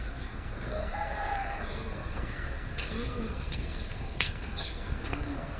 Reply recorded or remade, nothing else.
remade